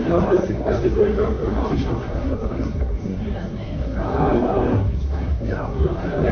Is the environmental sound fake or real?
fake